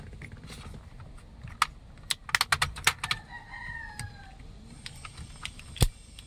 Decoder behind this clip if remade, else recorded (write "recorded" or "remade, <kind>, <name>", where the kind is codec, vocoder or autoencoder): recorded